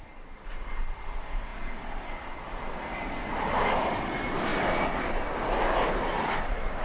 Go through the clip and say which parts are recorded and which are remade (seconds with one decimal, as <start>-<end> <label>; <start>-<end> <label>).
0.0-6.8 recorded